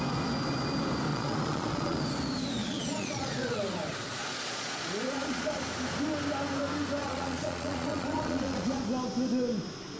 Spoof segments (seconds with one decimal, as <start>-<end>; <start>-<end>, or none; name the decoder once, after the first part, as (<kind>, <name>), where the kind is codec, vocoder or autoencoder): 1.1-2.0 (vocoder, Vocos); 2.6-3.6; 4.2-5.6; 7.0-8.8